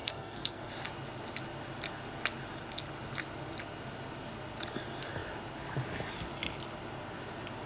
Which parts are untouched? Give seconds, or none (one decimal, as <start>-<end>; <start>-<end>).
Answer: 0.7-7.7